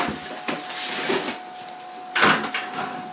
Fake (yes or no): no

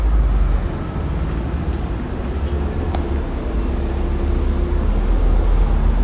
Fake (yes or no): no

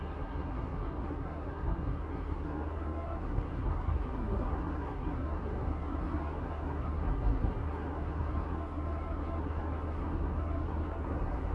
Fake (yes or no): yes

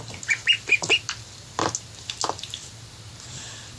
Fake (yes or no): no